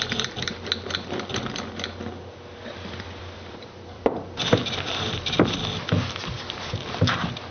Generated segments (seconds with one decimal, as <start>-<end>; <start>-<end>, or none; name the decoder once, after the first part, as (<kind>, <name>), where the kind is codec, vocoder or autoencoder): 2.6-7.0 (vocoder, BigVGAN v2)